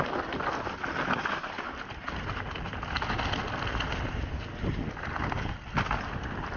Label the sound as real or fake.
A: real